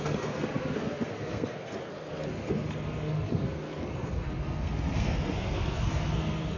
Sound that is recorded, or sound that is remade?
remade